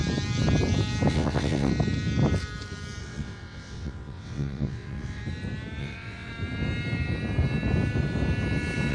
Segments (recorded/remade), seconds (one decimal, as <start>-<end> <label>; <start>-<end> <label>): 0.0-1.1 recorded; 1.1-1.7 remade; 1.7-3.0 recorded; 3.0-5.2 remade; 5.2-5.8 recorded; 5.8-6.3 remade; 6.3-8.9 recorded